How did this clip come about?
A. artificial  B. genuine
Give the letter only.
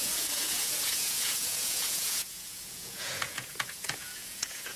A